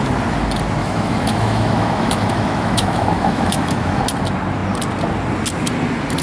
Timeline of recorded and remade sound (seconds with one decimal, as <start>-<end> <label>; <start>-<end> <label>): 0.0-0.8 recorded; 0.8-4.0 remade; 4.0-6.2 recorded